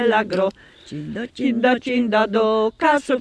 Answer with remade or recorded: recorded